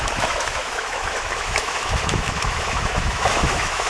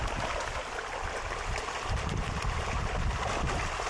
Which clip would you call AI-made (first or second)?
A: first